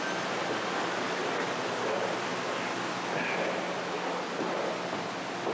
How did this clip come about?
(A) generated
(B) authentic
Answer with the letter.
B